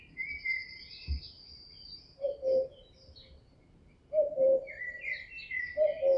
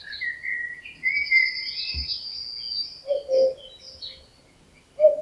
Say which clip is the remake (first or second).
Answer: first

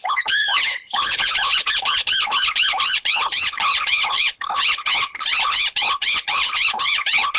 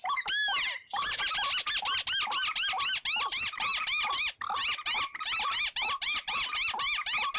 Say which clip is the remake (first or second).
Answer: first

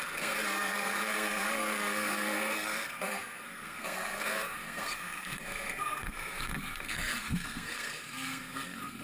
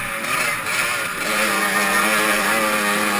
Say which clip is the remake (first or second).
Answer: first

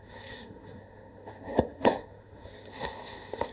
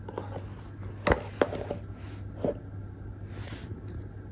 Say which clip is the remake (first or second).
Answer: first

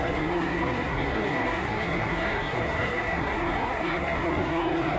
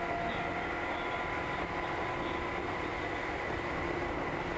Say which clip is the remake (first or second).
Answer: first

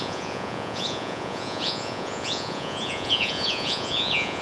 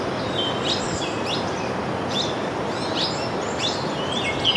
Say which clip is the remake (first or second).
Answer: first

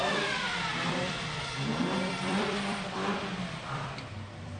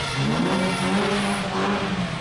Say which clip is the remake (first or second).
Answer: first